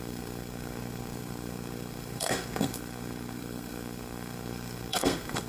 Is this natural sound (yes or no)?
no